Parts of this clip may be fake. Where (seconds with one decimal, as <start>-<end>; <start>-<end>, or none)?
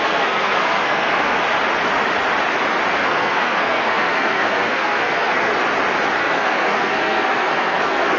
0.0-1.4; 2.9-5.5; 6.2-8.2